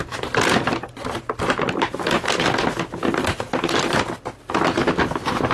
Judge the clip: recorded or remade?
recorded